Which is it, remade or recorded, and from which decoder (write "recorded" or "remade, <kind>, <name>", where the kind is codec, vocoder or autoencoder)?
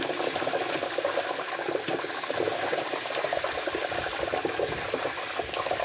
recorded